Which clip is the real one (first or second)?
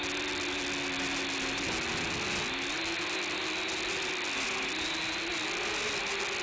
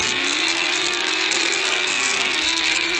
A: first